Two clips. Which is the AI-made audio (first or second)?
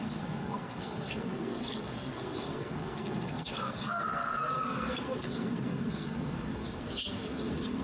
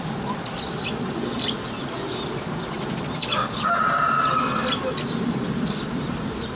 first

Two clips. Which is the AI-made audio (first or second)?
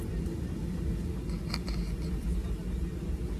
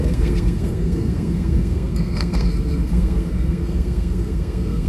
second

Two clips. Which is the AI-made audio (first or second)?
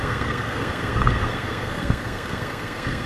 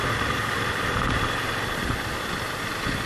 first